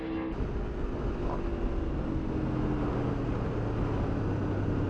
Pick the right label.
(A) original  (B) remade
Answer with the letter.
A